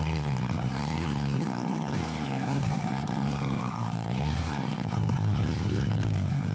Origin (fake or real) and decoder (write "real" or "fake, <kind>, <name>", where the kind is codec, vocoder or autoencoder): fake, codec, SNAC